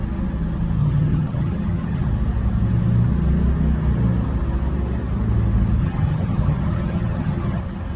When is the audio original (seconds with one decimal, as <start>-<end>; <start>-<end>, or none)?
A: 0.0-0.8; 2.1-5.8; 7.6-8.0